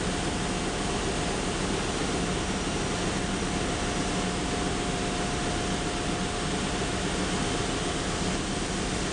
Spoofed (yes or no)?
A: no